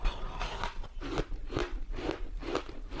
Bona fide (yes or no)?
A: yes